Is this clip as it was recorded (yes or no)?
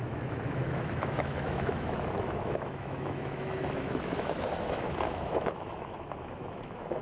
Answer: no